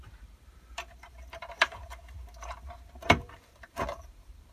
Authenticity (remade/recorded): remade